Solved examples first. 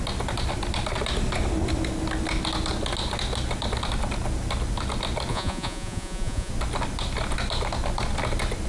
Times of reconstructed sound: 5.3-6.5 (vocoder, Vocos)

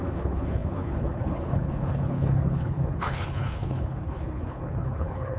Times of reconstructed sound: 0.0-5.4 (codec, HILCodec)